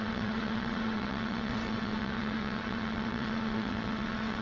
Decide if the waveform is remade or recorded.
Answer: remade